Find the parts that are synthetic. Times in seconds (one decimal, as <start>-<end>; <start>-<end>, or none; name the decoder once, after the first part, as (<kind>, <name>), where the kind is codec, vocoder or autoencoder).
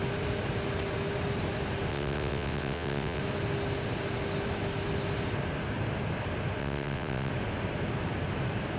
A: 1.9-3.2 (vocoder, WaveNeXt); 6.6-7.3